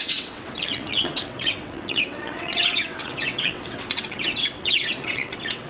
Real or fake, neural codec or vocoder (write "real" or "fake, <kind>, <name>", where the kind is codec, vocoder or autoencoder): fake, vocoder, WaveNeXt